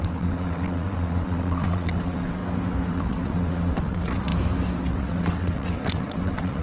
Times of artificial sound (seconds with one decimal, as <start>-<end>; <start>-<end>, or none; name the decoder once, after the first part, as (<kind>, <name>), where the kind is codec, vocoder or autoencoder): 0.0-2.4 (vocoder, WaveNeXt); 2.9-4.3; 4.9-6.6